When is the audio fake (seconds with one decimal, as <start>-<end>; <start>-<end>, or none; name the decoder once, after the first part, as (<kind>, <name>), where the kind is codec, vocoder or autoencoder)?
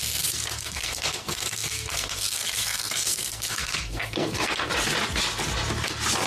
0.0-4.7 (codec, SNAC)